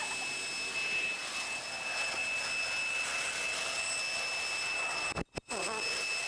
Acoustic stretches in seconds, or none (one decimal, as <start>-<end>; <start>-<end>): 0.0-6.3